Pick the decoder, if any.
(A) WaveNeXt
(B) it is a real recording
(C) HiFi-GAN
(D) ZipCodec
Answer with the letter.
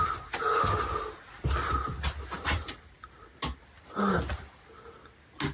B